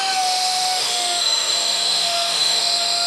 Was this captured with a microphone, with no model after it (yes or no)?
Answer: no